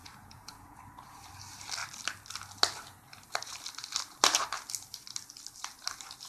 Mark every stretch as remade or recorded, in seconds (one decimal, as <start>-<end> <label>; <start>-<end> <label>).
0.0-0.8 remade; 0.8-6.3 recorded